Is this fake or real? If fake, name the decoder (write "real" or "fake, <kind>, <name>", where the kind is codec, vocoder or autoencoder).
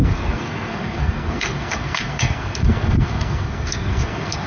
fake, codec, SNAC